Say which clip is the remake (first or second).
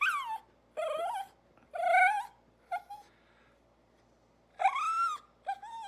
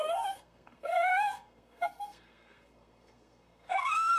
second